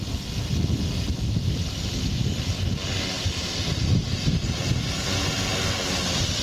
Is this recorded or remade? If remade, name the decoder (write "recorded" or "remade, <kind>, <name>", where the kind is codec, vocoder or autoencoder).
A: recorded